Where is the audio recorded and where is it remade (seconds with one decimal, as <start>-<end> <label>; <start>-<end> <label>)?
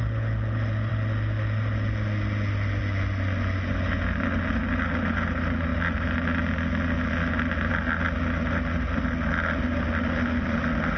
0.0-11.0 recorded